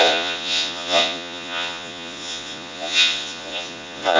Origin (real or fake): fake